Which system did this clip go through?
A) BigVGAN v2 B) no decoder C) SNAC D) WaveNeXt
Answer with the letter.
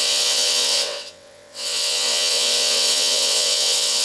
D